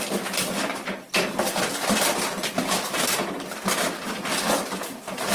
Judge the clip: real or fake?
fake